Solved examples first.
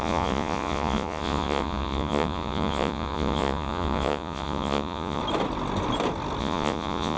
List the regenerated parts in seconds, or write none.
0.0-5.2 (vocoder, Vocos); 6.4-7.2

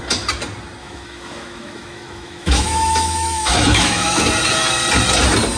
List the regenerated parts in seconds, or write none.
0.8-4.2 (autoencoder, DAC-VAE)

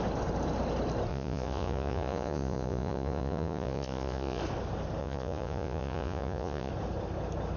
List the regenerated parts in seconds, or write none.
1.1-4.4 (vocoder, Vocos); 5.0-6.7

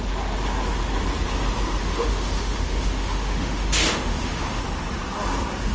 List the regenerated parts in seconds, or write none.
1.8-4.6 (autoencoder, DAC-VAE)

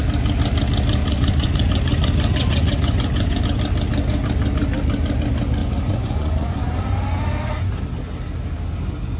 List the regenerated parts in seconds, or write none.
1.0-3.4 (vocoder, Vocos); 5.6-6.8

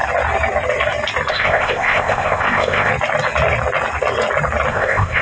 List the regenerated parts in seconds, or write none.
1.3-2.9 (codec, ZipCodec); 4.7-5.2